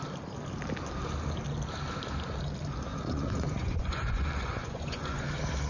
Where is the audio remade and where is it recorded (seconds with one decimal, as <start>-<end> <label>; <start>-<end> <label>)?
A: 0.0-2.9 recorded; 2.9-5.2 remade; 5.2-5.7 recorded